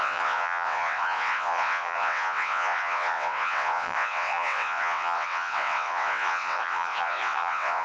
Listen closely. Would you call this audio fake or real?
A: fake